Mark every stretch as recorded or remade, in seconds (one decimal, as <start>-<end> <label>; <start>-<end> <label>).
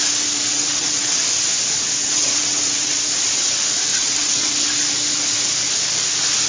0.0-0.5 recorded; 0.5-1.2 remade; 1.2-2.0 recorded; 2.0-3.0 remade; 3.0-3.9 recorded; 3.9-4.6 remade; 4.6-6.5 recorded